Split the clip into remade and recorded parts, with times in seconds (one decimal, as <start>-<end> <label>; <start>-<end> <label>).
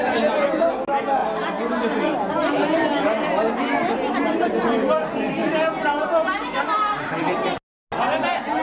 0.0-3.8 recorded; 3.8-4.4 remade; 4.4-8.6 recorded